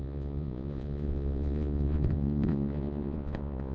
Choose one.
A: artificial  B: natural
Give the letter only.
A